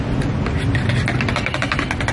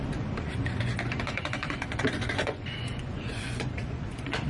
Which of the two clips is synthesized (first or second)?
second